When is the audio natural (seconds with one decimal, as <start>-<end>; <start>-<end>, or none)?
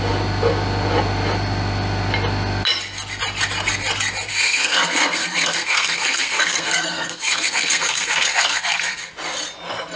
0.0-4.3; 9.1-10.0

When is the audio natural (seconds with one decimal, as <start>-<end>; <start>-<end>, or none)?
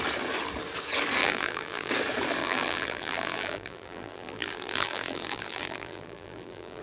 0.0-1.2; 1.9-2.4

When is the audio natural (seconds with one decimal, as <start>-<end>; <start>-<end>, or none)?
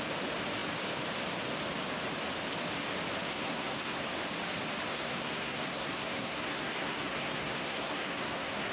0.0-3.3; 4.0-4.9